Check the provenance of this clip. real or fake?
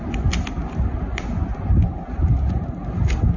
real